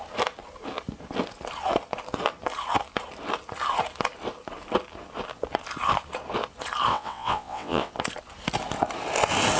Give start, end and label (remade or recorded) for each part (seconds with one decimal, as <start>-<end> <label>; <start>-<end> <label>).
0.0-6.9 recorded; 6.9-7.9 remade; 7.9-9.6 recorded